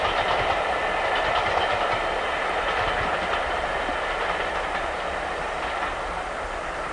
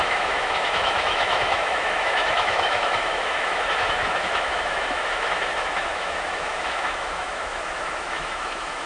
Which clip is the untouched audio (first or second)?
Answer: first